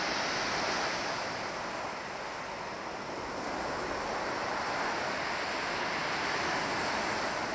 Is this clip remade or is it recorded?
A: recorded